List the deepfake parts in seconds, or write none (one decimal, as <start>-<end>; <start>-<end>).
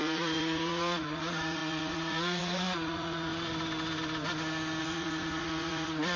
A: 0.0-3.3; 4.8-6.2